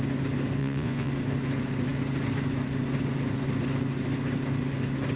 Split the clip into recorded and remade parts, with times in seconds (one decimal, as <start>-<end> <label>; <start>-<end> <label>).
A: 0.0-0.6 recorded; 0.6-1.1 remade; 1.1-5.2 recorded